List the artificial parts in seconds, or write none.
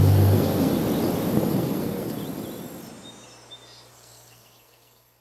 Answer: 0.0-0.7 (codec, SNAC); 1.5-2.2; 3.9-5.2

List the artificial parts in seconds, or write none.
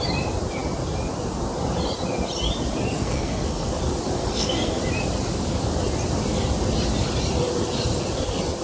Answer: 2.9-3.7 (codec, SNAC); 4.2-4.8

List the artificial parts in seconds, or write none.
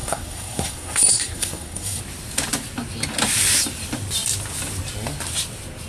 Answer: 0.0-2.0 (codec, SNAC)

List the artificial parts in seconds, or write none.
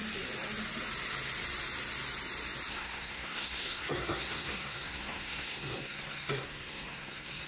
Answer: 2.7-7.5 (codec, SNAC)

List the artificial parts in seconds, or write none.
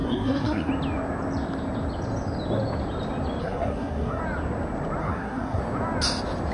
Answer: 0.0-0.7 (codec, SNAC); 3.4-4.2; 5.0-5.6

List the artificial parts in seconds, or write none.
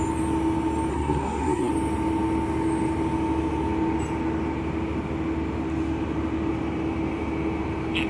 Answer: 0.9-1.7 (codec, SNAC)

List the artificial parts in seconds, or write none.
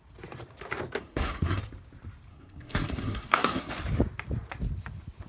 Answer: 1.0-1.6 (codec, SNAC); 2.3-3.7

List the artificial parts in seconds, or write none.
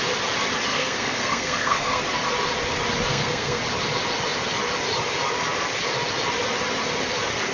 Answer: 0.7-2.0 (codec, SNAC); 3.1-3.6